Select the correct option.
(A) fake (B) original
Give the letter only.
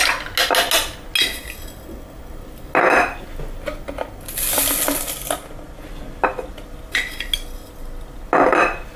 B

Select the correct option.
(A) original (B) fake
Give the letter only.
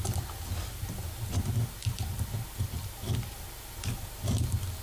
A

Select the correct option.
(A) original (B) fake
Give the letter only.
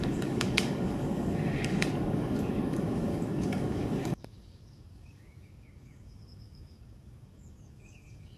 B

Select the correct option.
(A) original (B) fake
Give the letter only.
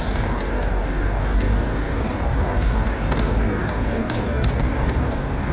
B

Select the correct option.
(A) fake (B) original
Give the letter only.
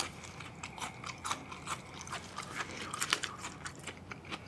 B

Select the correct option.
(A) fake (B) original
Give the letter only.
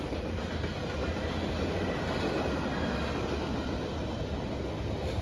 B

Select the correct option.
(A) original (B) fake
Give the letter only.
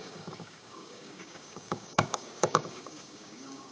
B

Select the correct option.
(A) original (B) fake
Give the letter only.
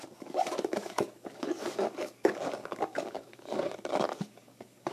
B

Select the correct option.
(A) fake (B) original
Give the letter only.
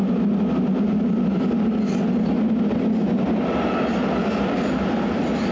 B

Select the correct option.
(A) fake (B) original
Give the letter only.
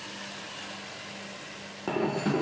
B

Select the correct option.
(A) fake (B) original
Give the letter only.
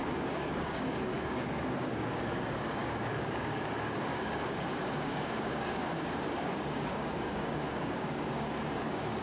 A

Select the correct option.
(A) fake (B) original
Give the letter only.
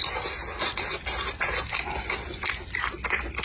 B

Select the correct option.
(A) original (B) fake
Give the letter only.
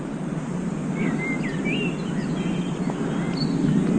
A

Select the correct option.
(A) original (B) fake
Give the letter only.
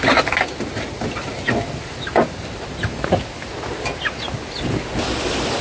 A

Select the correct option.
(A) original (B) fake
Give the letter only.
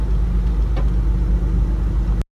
A